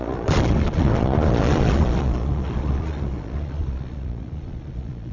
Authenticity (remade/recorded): remade